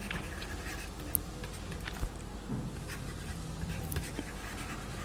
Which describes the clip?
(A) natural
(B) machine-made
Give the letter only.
A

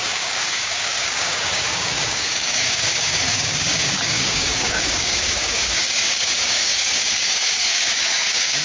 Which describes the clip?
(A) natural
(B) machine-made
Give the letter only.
B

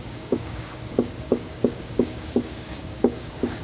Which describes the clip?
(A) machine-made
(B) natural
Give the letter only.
A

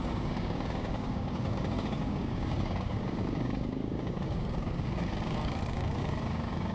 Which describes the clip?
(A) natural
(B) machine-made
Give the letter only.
B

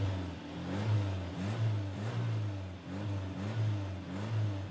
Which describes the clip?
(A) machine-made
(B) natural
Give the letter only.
B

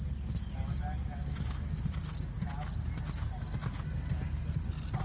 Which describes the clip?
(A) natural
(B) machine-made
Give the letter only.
A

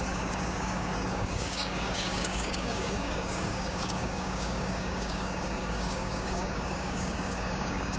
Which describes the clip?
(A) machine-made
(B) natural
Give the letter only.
A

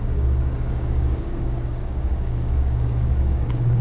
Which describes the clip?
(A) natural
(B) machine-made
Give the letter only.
B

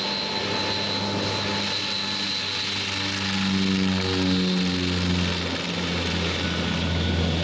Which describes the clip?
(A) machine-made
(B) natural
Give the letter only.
B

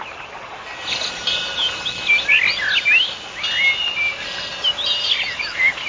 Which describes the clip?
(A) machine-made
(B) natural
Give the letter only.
B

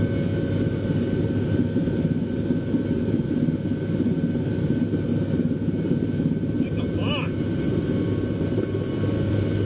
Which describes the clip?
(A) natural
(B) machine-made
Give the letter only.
A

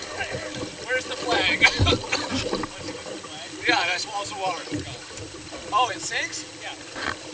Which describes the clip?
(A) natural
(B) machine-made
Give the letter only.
A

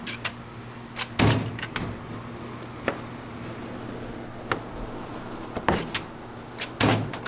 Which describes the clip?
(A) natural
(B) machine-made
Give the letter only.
A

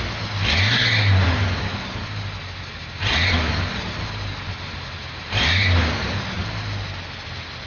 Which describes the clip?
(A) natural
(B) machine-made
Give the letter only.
A